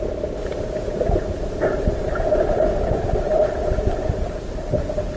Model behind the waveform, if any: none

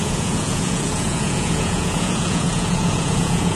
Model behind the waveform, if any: vocoder, Vocos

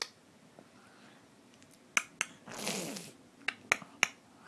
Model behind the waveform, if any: none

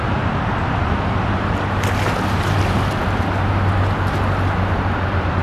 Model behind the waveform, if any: none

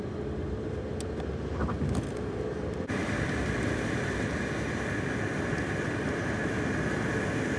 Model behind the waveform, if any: none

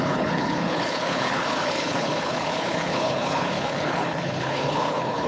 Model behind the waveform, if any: codec, HILCodec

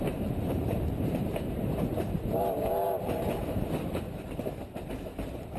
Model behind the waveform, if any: vocoder, BigVGAN v2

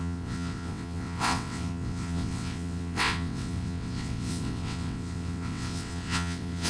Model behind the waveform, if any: vocoder, WaveNeXt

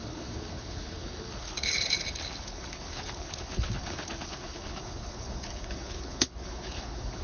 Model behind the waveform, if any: codec, HILCodec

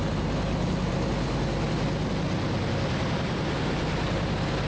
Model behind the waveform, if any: none